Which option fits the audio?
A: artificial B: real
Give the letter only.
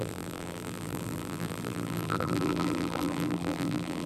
A